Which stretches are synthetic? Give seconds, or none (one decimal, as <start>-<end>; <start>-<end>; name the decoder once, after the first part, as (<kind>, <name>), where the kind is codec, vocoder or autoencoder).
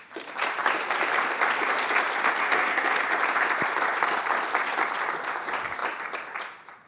2.4-3.0 (codec, SNAC)